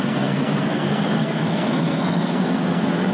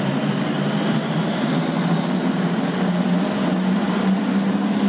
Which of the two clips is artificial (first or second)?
first